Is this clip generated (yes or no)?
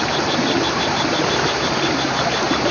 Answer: yes